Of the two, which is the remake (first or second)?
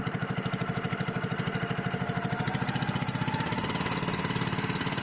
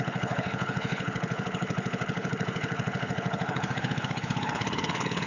second